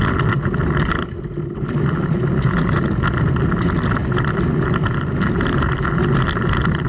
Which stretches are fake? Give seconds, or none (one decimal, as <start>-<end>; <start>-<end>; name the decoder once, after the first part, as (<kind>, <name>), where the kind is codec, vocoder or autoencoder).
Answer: none

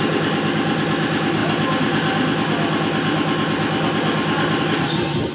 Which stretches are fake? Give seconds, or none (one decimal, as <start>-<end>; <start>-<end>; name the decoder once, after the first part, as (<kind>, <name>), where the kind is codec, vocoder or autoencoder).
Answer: none

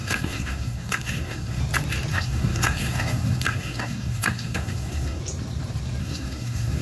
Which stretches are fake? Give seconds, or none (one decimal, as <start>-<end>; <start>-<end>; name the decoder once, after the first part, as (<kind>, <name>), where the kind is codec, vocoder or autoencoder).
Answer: 0.0-1.6 (codec, SNAC); 2.1-5.2; 6.0-6.8

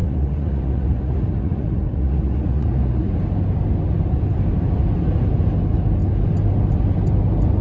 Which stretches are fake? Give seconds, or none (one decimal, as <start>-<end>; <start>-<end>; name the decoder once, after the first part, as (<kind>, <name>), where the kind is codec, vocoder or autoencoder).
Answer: 0.0-3.1 (vocoder, Vocos)

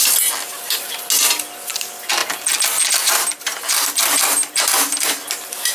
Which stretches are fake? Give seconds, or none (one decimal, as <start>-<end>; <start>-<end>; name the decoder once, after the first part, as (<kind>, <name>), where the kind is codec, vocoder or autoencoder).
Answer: none

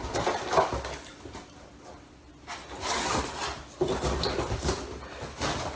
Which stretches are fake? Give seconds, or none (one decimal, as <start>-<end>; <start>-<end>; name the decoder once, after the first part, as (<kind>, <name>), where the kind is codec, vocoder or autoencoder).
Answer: none

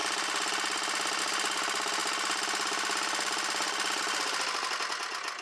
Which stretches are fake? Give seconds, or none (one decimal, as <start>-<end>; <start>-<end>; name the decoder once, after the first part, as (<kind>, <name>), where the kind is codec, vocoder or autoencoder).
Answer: none